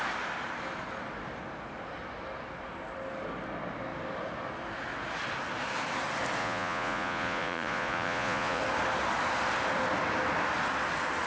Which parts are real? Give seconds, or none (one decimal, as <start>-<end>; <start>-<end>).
0.0-6.4; 8.6-11.3